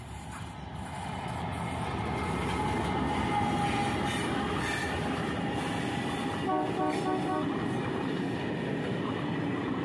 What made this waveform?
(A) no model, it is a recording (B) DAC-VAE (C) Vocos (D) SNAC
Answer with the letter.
A